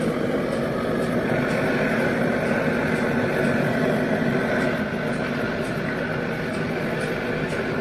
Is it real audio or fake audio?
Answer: real